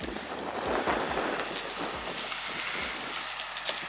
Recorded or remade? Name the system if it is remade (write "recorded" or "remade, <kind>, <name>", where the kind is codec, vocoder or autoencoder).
recorded